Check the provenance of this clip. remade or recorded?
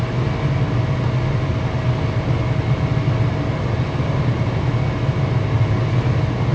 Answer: recorded